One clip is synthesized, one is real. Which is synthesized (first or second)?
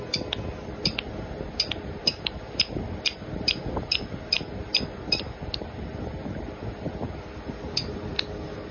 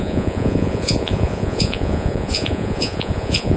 second